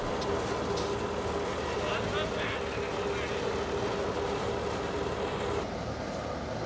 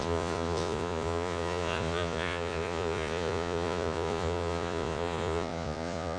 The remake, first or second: second